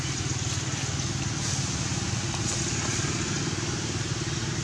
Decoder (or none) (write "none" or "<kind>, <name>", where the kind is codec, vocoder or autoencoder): none